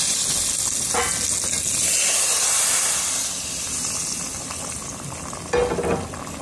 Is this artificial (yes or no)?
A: no